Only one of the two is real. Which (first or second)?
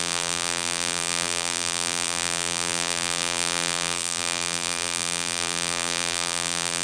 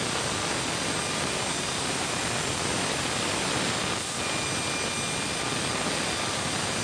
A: second